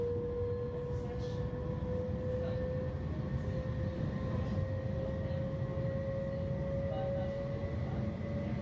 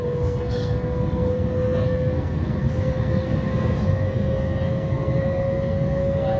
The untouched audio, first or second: first